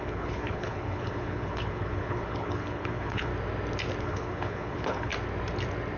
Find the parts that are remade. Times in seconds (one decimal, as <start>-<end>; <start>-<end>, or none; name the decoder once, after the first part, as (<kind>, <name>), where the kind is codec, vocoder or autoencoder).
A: 0.0-3.3 (codec, HILCodec); 4.0-5.1